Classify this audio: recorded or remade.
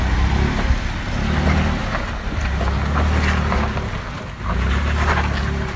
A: recorded